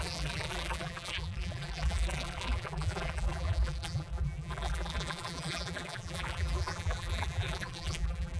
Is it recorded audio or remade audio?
remade